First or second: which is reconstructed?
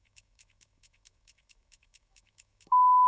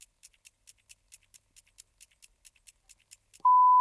first